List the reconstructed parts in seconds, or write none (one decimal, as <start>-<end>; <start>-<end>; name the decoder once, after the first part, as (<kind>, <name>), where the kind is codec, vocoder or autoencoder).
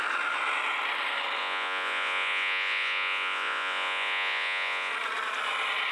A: 1.4-4.9 (vocoder, Vocos)